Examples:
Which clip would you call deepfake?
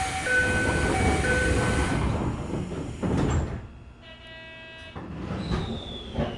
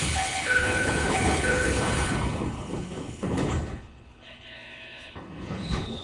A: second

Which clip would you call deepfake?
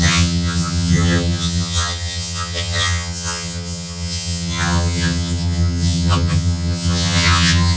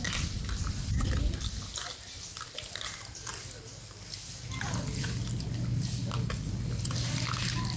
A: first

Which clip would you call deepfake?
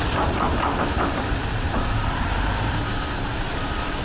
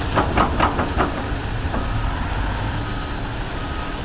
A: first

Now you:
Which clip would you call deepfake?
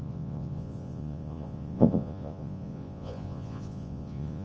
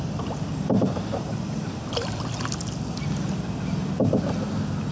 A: first